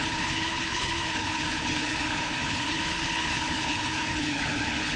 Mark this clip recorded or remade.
remade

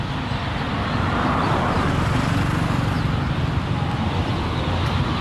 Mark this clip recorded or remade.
recorded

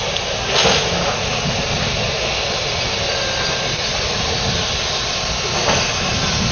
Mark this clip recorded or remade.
recorded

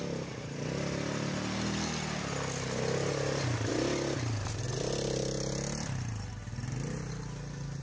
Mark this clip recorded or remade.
recorded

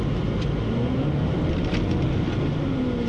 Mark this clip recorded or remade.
recorded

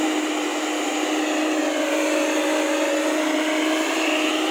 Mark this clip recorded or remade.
recorded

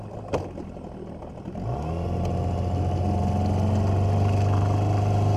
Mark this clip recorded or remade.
recorded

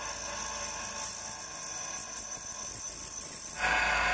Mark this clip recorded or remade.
recorded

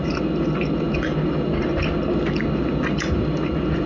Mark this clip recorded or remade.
recorded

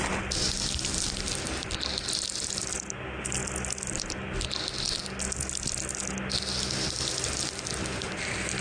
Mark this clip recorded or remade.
recorded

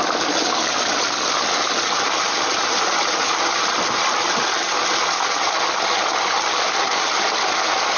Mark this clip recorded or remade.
recorded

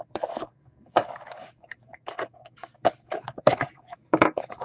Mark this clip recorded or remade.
remade